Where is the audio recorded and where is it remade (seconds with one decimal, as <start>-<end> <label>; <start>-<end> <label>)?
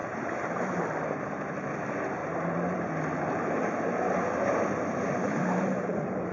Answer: 0.0-0.8 remade; 0.8-2.2 recorded; 2.2-6.3 remade